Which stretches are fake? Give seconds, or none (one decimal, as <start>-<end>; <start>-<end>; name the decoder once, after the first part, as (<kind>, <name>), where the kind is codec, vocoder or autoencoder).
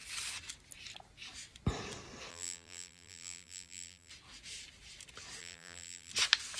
2.3-4.1 (vocoder, BigVGAN v2); 5.4-6.1